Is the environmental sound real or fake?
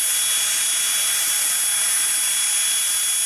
real